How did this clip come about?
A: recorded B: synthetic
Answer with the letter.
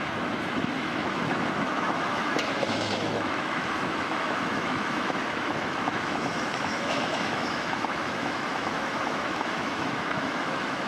B